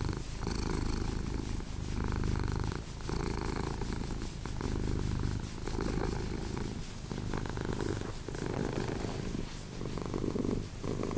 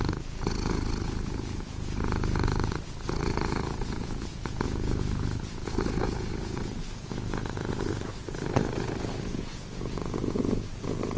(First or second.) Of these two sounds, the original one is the first